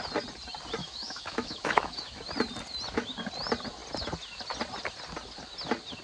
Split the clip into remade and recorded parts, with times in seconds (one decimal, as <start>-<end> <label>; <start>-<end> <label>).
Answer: 0.0-0.8 recorded; 0.8-2.2 remade; 2.2-6.0 recorded